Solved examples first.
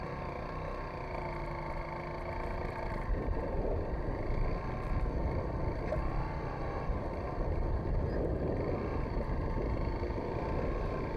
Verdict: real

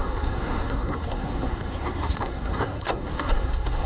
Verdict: fake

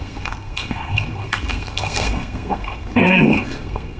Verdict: fake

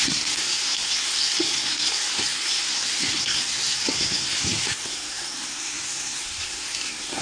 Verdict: fake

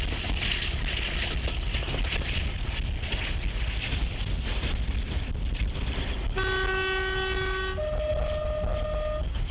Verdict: real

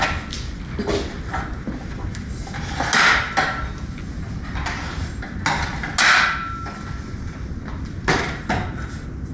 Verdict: real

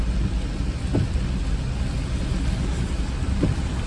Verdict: real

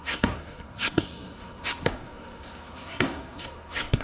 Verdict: fake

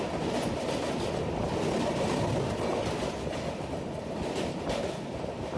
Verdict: real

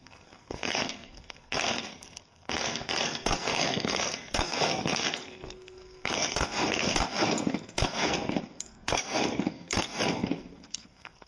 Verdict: fake